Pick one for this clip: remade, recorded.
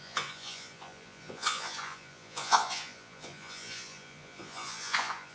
remade